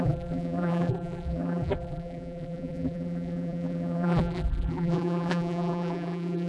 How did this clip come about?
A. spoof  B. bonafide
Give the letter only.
A